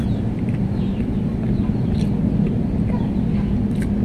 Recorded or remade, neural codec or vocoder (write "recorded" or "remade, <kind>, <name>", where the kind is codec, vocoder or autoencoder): recorded